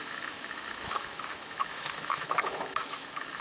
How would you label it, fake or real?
fake